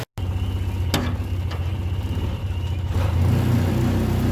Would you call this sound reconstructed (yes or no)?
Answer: no